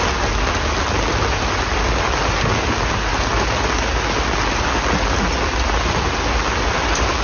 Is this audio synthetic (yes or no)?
no